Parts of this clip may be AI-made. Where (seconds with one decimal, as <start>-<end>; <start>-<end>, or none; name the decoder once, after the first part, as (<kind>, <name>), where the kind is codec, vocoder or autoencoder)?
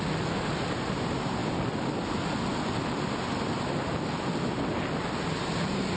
none